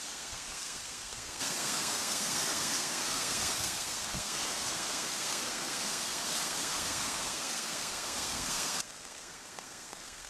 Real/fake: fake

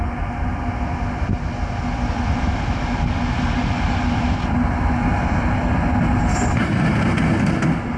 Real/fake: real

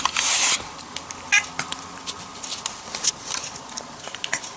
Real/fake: real